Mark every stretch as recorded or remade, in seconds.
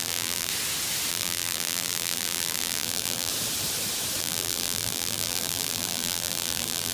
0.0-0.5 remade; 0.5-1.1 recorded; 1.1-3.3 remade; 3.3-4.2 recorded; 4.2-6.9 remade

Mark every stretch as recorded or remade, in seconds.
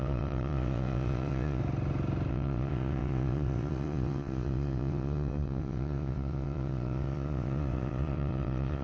0.0-1.6 remade; 1.6-2.3 recorded; 2.3-8.8 remade